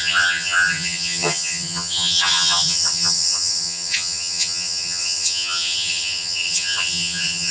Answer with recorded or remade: remade